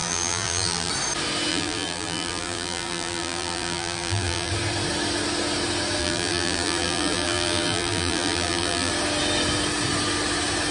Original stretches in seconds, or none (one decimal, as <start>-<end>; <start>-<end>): 0.9-1.5; 4.5-6.0; 8.9-10.7